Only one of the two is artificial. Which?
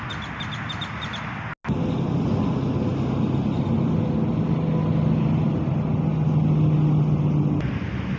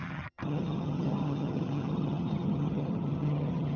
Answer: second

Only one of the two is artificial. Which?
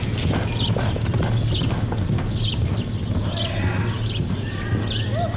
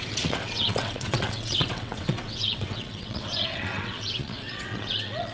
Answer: second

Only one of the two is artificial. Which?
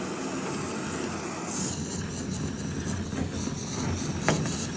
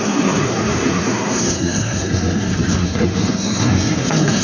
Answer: second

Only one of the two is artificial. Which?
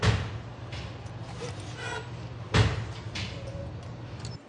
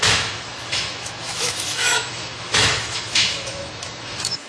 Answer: second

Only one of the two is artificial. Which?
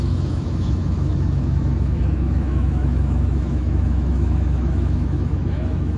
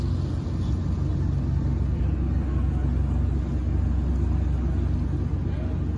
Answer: first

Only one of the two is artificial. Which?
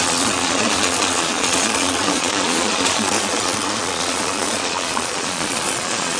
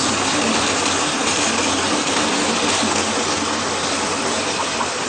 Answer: first